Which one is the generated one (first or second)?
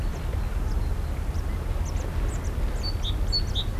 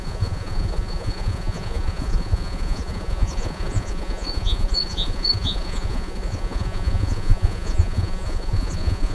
second